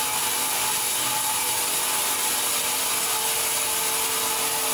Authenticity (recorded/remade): recorded